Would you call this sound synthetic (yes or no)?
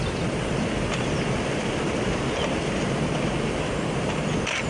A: no